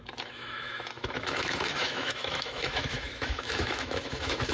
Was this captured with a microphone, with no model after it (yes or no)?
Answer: no